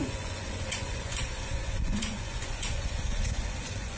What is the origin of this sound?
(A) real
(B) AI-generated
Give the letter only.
B